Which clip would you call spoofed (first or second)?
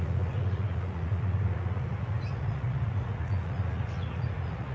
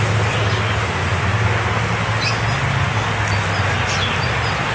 first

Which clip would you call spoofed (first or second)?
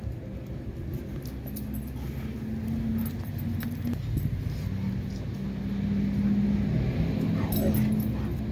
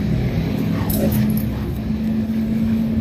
second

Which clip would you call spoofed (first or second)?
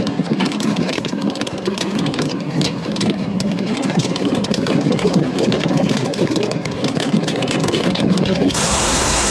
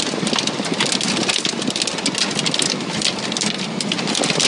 first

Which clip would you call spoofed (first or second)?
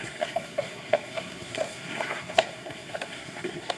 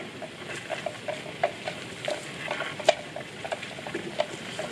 first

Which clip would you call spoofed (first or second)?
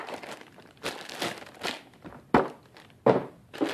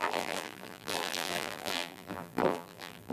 second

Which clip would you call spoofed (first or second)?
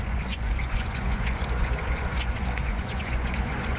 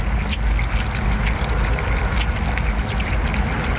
first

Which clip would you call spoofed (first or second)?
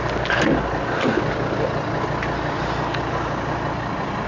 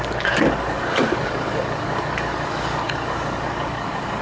second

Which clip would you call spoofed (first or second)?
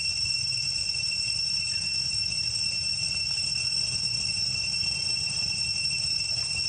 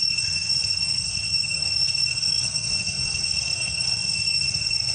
second